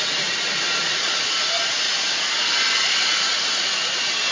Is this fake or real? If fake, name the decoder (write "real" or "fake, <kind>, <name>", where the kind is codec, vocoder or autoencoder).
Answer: fake, vocoder, BigVGAN v2